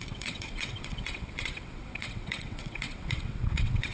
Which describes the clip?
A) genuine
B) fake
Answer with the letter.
B